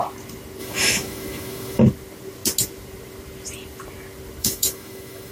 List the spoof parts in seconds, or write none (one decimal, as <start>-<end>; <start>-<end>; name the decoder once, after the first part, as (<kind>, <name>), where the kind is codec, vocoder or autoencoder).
0.6-1.8 (autoencoder, DAC-VAE); 4.4-5.3